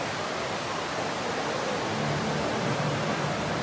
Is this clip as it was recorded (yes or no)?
yes